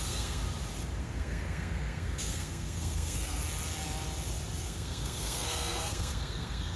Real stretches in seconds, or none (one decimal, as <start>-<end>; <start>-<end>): 0.4-1.0; 3.4-4.6